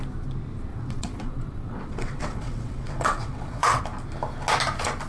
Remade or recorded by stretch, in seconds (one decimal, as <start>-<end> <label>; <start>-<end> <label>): 0.0-0.7 recorded; 0.7-3.8 remade; 3.8-5.1 recorded